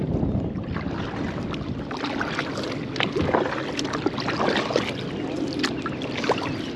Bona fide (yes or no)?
yes